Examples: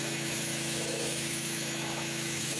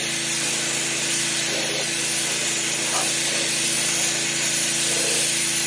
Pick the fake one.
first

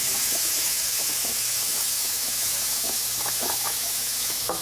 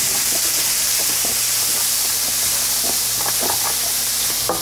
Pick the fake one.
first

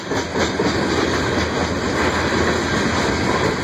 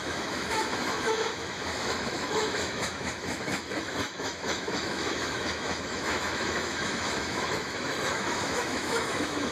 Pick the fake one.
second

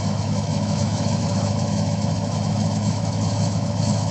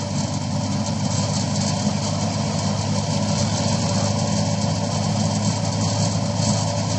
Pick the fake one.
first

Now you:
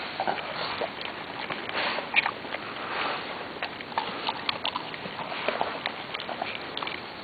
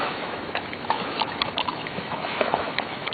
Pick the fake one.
second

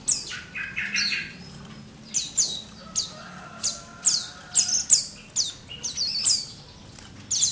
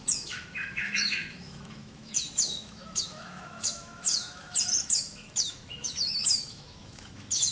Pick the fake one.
second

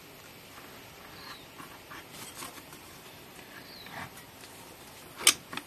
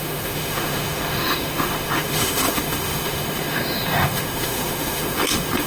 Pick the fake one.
second